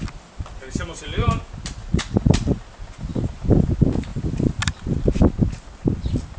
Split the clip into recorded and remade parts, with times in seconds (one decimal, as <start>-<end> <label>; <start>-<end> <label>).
0.0-1.8 recorded; 1.8-2.6 remade; 2.6-6.4 recorded